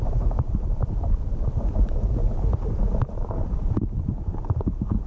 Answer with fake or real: fake